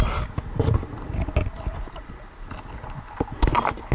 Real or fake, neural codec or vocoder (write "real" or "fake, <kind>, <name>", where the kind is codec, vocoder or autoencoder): real